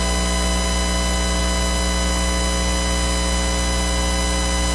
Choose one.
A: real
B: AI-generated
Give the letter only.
A